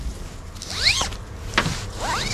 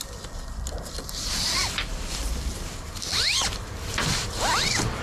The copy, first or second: second